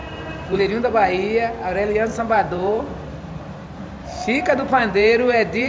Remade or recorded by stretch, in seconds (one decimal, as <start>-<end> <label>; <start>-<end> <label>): 0.0-0.6 remade; 0.6-2.1 recorded; 2.1-5.7 remade